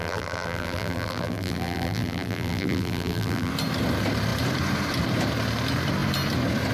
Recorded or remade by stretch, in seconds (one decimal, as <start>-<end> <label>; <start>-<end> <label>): 0.0-3.5 remade; 3.5-6.7 recorded